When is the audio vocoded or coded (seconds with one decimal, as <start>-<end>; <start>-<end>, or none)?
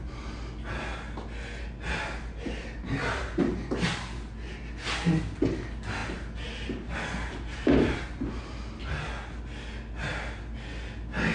none